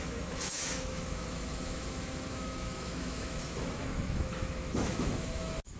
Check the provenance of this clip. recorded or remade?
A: remade